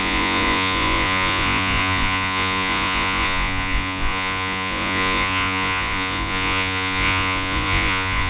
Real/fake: fake